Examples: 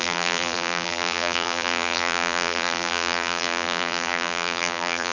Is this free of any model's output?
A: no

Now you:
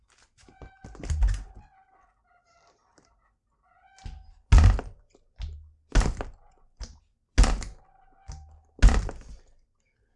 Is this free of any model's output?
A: yes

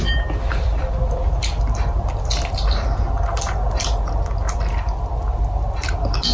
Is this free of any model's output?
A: yes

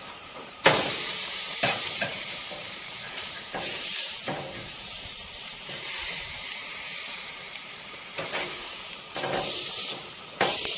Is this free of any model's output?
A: no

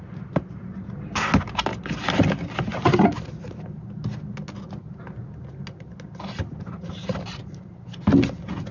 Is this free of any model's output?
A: yes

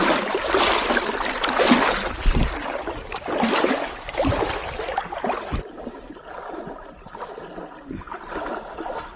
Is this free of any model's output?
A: yes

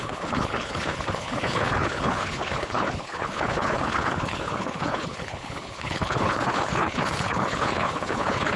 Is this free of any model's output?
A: no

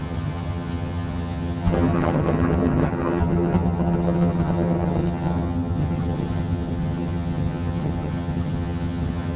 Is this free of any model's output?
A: no